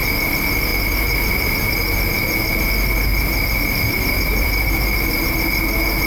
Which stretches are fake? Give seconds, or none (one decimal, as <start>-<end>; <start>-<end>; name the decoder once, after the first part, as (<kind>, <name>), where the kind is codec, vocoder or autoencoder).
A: 0.7-2.6 (vocoder, BigVGAN v2); 3.1-5.3